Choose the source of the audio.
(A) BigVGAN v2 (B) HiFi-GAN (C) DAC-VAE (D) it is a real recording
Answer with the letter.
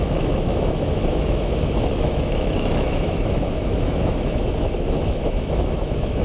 C